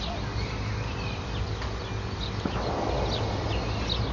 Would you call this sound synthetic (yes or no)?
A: no